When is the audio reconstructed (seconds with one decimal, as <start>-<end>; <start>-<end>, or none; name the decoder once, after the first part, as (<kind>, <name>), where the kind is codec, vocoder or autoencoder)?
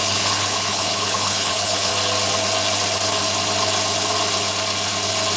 0.0-1.9 (codec, HILCodec)